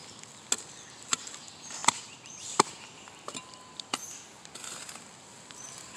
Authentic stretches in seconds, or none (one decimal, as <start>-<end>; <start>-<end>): 0.0-0.9; 1.8-5.4